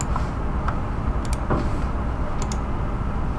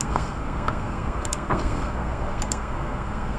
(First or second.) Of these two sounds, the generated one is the second